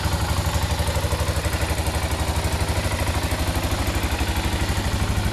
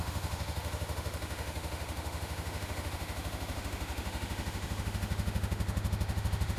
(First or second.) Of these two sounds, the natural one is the first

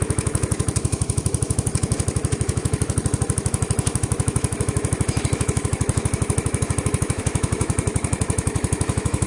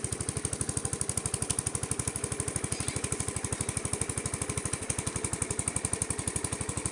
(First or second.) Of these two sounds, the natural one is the second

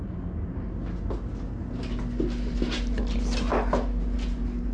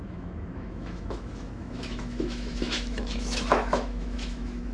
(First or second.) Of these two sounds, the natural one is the first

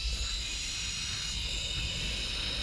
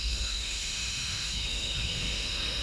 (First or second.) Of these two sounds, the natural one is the first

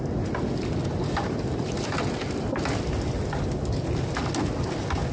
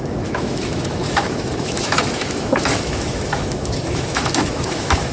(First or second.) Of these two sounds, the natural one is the first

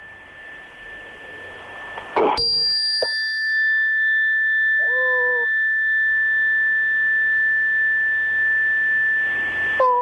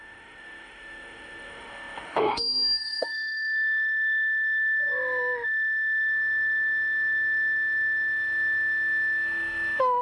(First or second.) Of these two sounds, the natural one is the first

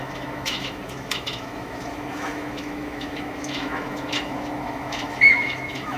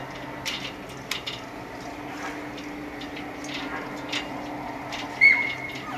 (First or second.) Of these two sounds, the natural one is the second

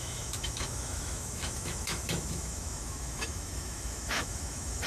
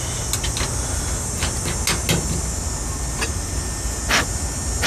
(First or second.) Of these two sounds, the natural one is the second